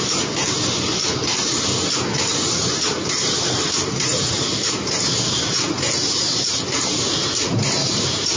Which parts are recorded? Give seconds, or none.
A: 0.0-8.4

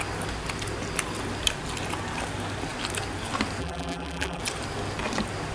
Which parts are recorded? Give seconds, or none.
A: 0.0-3.6; 4.4-5.5

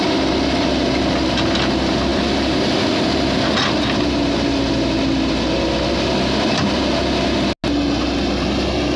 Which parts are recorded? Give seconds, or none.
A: 0.0-9.0

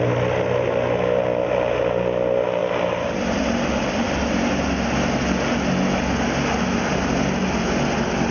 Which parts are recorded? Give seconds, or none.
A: 0.0-8.3

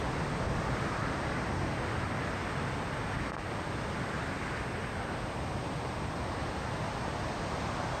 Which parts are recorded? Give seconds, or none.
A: 0.0-8.0